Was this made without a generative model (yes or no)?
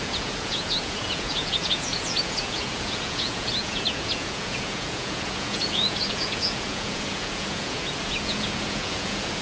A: no